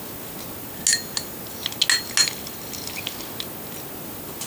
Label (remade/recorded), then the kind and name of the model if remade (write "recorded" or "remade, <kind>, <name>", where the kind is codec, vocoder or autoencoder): recorded